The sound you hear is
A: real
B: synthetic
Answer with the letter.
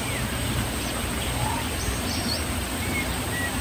B